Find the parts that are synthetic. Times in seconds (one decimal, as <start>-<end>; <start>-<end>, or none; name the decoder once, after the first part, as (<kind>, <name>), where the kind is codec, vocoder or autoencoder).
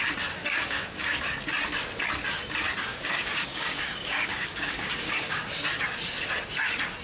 0.4-1.2 (codec, DAC); 2.9-5.5